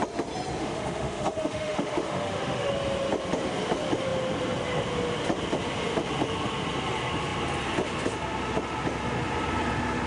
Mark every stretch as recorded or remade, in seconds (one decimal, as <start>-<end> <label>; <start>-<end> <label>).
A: 0.0-0.6 recorded; 0.6-2.7 remade; 2.7-10.1 recorded